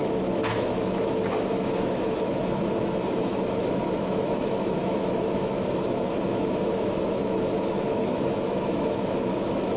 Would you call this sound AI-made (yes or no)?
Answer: yes